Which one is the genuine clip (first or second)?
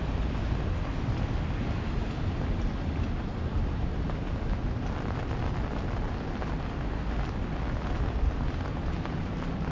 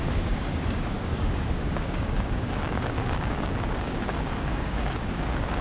first